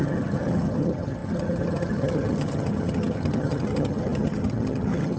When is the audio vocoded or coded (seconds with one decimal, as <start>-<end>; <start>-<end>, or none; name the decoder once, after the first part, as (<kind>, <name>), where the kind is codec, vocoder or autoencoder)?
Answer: 0.0-5.2 (vocoder, HiFi-GAN)